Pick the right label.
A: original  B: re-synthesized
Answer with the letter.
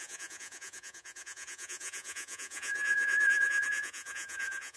B